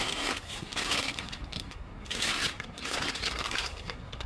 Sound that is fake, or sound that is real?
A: fake